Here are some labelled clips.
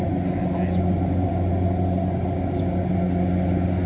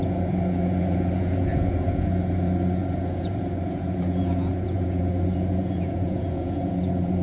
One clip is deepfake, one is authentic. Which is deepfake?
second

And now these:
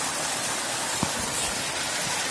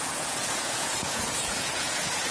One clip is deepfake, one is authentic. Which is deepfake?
second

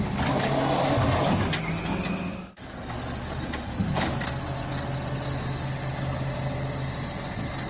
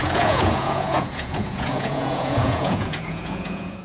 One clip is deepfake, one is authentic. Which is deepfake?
second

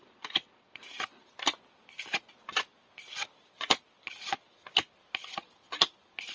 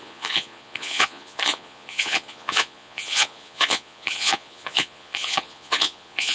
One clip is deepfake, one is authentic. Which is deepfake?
second